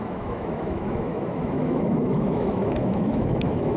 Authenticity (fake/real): fake